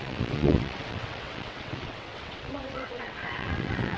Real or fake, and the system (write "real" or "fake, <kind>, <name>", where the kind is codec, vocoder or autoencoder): fake, vocoder, WaveNeXt